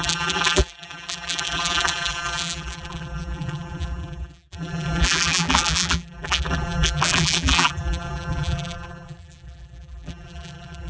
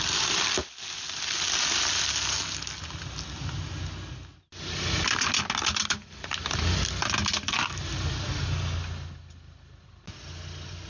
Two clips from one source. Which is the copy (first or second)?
first